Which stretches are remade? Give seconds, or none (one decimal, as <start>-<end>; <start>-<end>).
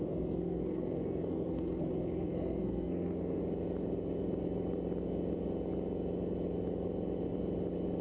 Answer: 0.0-3.4